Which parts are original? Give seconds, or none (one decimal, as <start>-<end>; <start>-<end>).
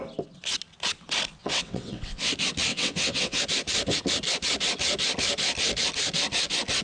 0.0-1.4; 2.3-2.7; 3.4-6.8